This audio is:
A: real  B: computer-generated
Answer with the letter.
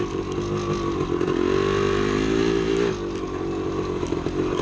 A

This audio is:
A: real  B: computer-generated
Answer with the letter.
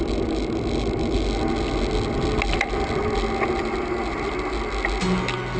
A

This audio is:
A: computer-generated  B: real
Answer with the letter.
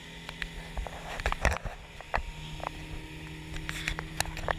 B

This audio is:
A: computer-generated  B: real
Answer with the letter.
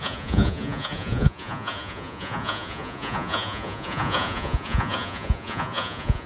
A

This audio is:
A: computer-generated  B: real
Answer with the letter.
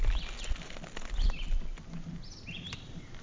B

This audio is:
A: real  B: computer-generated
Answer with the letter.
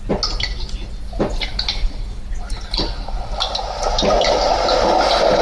A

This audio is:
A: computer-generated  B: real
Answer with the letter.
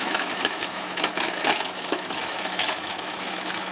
A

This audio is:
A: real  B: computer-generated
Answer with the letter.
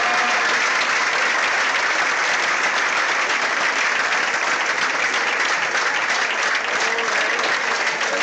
A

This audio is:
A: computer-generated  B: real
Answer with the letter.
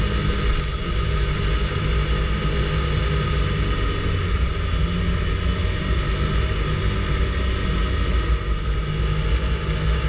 B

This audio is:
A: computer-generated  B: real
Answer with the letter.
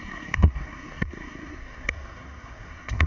A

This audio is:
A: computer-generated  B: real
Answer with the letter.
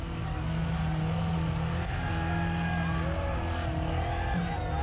B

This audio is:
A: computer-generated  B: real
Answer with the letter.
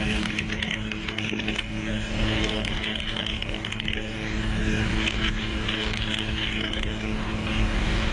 A